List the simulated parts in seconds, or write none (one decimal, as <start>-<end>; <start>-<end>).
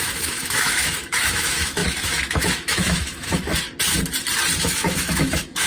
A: 0.0-3.5; 4.6-5.7